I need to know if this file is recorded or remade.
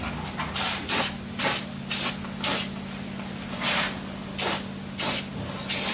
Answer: recorded